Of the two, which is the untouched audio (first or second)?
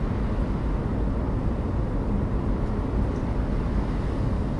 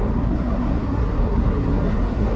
first